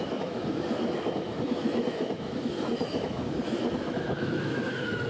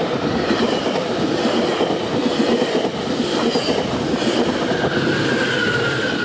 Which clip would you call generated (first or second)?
first